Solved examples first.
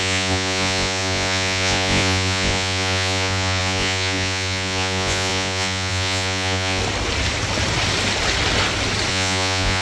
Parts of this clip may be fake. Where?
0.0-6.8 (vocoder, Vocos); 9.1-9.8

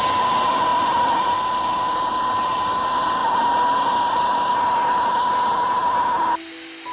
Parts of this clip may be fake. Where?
none